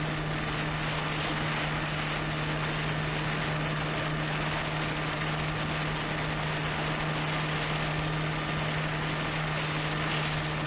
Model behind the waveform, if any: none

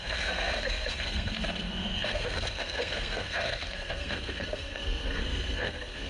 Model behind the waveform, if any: codec, SNAC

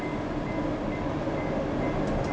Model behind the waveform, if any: none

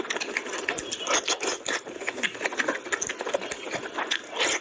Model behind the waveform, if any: none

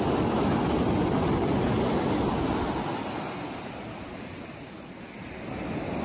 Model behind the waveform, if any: none